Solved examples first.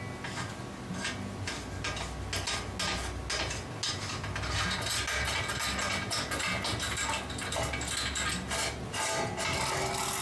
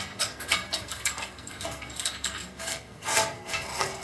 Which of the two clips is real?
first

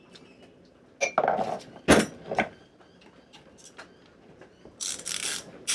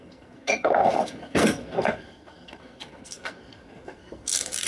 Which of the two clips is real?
first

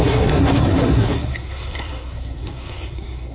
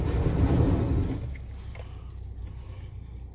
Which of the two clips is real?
second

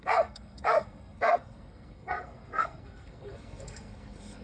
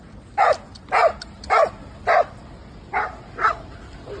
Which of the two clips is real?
second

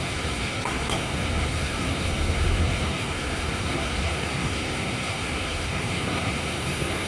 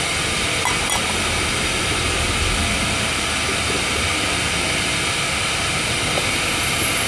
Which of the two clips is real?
second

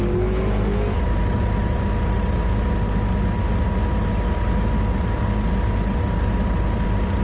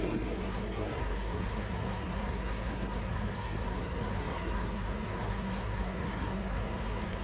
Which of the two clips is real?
first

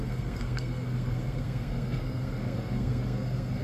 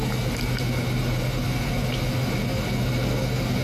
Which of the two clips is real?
second